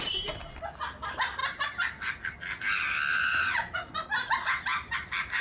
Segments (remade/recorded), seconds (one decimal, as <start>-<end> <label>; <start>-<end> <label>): 0.0-3.1 recorded; 3.1-4.1 remade; 4.1-4.7 recorded; 4.7-5.4 remade